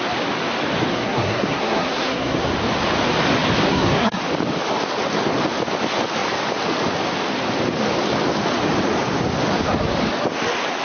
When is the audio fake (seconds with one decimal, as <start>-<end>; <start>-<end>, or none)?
0.9-2.5; 3.7-4.2